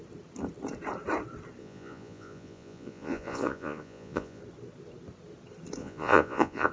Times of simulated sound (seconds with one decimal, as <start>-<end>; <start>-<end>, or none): 1.6-4.4; 5.8-6.7